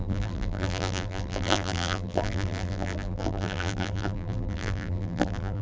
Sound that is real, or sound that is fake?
fake